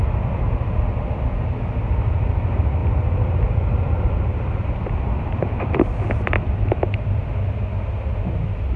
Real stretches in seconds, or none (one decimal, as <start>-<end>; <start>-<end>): 0.0-2.8; 7.3-8.8